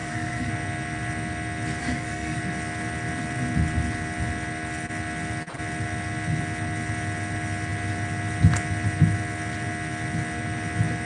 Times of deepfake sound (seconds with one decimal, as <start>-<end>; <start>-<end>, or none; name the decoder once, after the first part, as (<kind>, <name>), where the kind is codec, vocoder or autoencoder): 0.0-0.5 (codec, SNAC); 1.8-2.4